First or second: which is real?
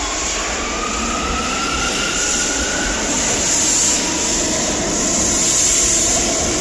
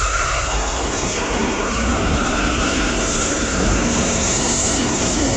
first